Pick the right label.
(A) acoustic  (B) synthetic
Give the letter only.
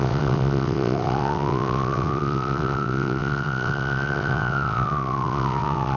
B